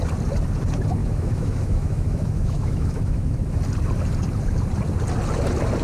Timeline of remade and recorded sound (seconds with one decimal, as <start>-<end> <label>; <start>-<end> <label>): 0.0-1.0 recorded; 1.0-3.6 remade; 3.6-5.8 recorded